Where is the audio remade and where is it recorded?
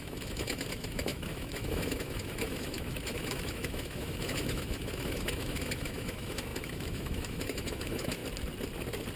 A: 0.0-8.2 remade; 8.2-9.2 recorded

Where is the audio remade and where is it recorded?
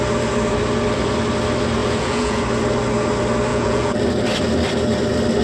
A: 0.0-1.8 recorded; 1.8-2.4 remade; 2.4-3.5 recorded; 3.5-4.0 remade; 4.0-5.4 recorded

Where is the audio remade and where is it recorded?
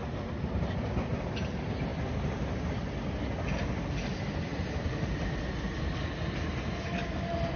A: 0.0-7.6 recorded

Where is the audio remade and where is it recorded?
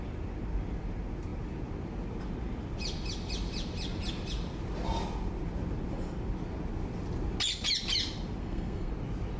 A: 0.0-8.4 recorded; 8.4-8.9 remade; 8.9-9.4 recorded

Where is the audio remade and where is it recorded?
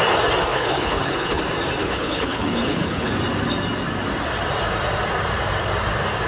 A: 0.0-0.5 recorded; 0.5-1.4 remade; 1.4-1.8 recorded; 1.8-3.1 remade; 3.1-6.3 recorded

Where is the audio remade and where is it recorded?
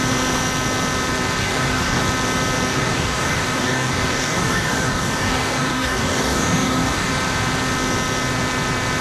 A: 0.0-1.4 recorded; 1.4-2.0 remade; 2.0-2.7 recorded; 2.7-7.1 remade; 7.1-9.0 recorded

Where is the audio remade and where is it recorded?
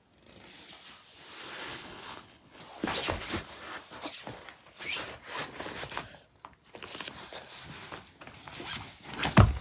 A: 0.0-1.7 recorded; 1.7-2.6 remade; 2.6-9.6 recorded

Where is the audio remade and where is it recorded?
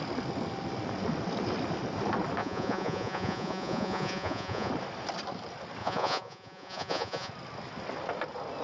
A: 0.0-2.4 recorded; 2.4-4.7 remade; 4.7-5.8 recorded; 5.8-7.3 remade; 7.3-8.6 recorded